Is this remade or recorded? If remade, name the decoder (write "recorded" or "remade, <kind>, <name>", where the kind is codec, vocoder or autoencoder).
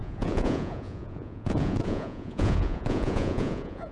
remade, vocoder, Vocos